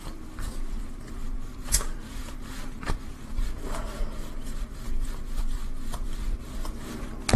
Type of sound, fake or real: fake